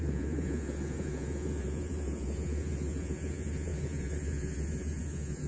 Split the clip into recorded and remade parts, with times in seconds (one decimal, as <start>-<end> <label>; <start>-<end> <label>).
0.0-5.5 remade